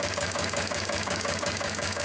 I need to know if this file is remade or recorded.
remade